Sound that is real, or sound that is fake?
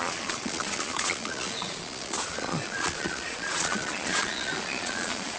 fake